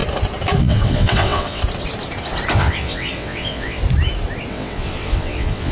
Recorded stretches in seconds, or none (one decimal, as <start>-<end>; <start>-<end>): 0.0-0.6; 1.6-2.5; 3.8-4.5

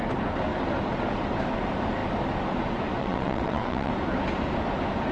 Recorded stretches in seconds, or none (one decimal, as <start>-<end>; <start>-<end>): 0.0-3.0; 3.9-5.1